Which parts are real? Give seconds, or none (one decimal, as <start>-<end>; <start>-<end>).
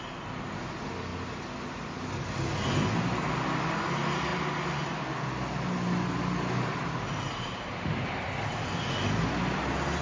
0.0-10.0